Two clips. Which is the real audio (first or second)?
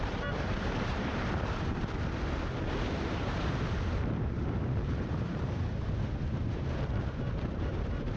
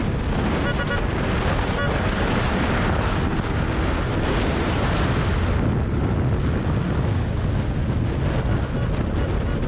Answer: second